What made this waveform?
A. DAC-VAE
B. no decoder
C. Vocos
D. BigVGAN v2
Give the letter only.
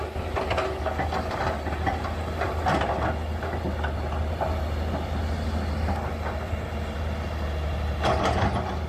B